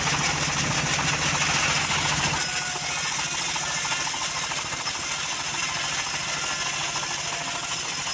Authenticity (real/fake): real